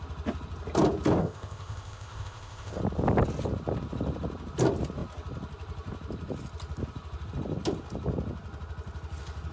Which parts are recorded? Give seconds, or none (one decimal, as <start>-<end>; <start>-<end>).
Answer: 0.0-1.2; 2.8-9.5